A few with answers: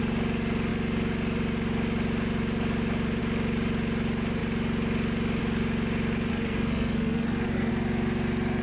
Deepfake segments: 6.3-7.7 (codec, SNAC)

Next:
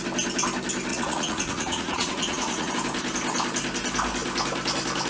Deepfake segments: 0.9-2.7 (vocoder, Vocos)

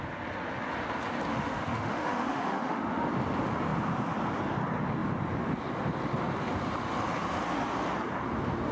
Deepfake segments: 1.3-3.1 (autoencoder, DAC-VAE)

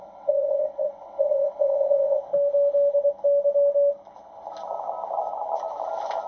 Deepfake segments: 0.0-2.3 (vocoder, WaveNeXt)